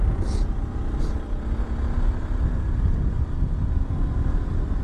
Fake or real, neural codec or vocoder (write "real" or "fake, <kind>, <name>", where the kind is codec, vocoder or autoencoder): real